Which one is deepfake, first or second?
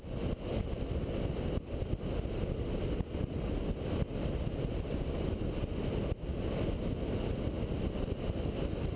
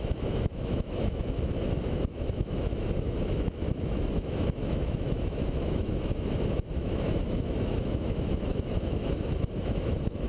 second